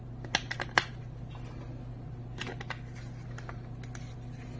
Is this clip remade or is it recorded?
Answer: recorded